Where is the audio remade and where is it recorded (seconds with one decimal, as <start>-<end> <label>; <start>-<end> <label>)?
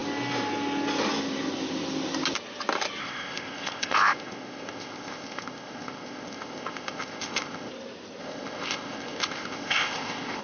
0.0-3.0 recorded; 3.0-7.7 remade; 7.7-8.2 recorded; 8.2-10.4 remade